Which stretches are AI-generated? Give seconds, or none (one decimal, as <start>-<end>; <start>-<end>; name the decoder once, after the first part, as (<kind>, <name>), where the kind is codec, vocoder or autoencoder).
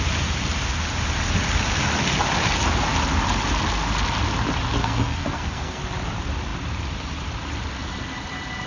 4.8-5.8 (codec, SNAC)